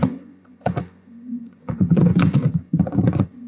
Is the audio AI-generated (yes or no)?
yes